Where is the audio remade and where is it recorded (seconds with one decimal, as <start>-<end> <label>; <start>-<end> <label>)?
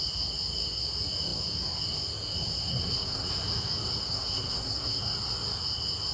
0.0-2.7 recorded; 2.7-3.3 remade; 3.3-4.0 recorded; 4.0-5.0 remade; 5.0-6.1 recorded